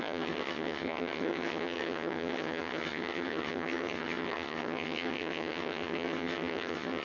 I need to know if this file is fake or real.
fake